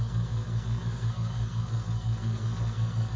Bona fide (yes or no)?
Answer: no